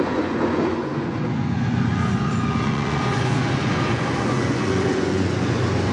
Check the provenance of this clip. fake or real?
fake